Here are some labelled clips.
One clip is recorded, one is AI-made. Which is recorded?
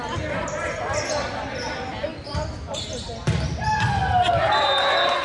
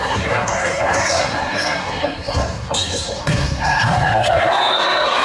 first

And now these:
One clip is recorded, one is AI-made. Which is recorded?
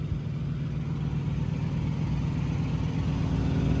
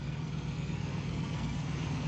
first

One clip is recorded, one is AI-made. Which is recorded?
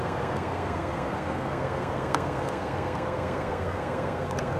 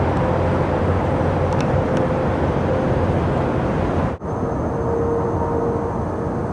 second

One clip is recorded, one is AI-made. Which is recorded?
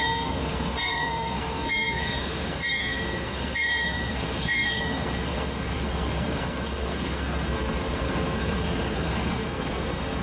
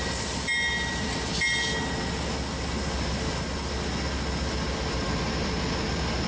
second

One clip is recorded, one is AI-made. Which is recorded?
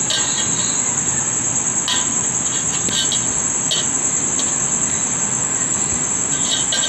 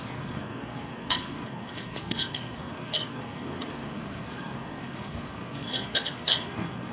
first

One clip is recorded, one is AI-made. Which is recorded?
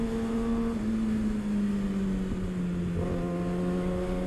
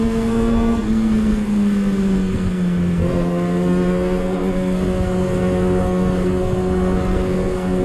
first